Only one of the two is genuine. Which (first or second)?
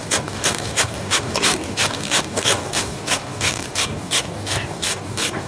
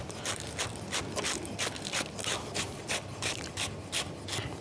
second